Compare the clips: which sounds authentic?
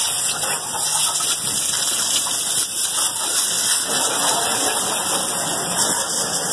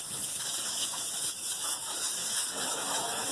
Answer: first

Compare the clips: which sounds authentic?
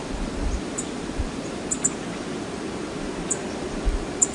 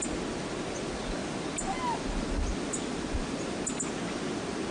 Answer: second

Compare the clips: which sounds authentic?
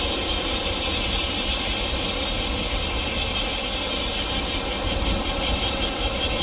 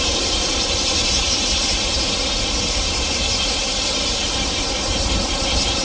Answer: first